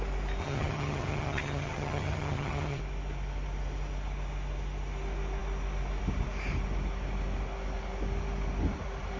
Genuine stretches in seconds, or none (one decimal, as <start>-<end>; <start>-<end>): 0.0-0.4; 2.8-9.2